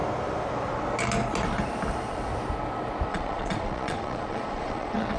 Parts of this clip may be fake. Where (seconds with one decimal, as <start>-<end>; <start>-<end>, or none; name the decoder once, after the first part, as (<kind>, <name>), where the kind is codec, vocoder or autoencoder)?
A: 3.1-5.2 (vocoder, Vocos)